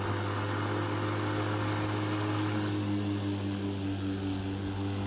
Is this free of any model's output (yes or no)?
yes